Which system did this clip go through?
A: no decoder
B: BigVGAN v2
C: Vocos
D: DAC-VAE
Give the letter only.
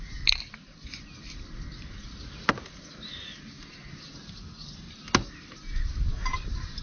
A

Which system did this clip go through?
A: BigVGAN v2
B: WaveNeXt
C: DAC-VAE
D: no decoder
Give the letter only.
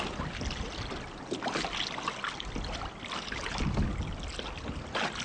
D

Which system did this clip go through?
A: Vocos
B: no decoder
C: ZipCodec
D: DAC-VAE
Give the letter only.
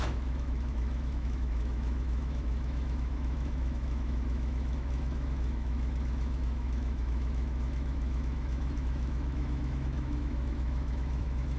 D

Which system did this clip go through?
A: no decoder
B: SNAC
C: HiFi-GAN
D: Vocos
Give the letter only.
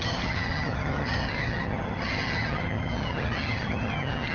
C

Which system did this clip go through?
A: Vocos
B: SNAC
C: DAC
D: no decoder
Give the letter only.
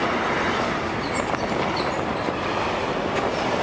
D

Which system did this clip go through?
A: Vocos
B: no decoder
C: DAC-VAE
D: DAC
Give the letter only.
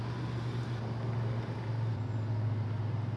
B